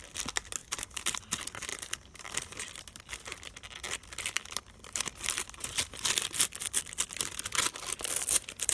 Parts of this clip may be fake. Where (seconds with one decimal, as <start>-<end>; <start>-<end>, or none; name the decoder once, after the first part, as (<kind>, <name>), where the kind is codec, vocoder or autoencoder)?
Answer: 0.6-1.2 (vocoder, BigVGAN v2)